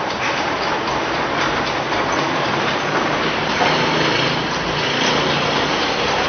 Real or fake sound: fake